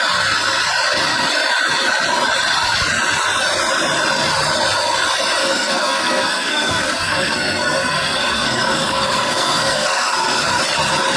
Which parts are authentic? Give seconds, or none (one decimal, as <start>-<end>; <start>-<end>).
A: 0.0-5.4; 10.6-11.2